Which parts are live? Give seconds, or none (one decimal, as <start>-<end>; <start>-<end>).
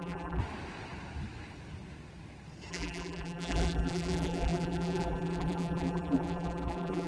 0.4-2.7